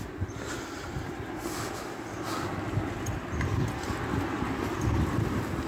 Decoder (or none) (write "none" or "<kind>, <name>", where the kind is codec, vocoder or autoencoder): none